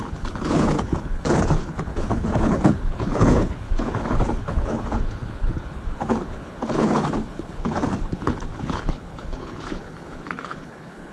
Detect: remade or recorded remade